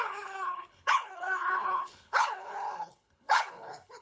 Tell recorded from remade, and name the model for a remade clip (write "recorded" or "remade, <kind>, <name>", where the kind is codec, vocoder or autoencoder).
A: remade, codec, HILCodec